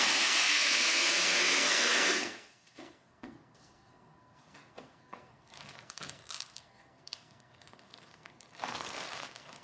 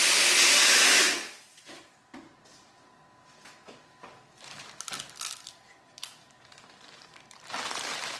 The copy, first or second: first